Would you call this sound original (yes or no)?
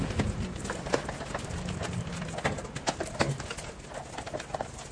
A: yes